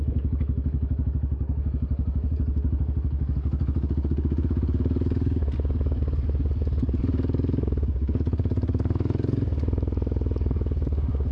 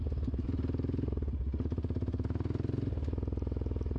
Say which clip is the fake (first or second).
first